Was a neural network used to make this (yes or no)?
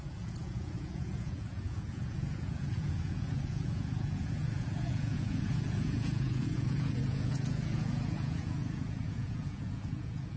yes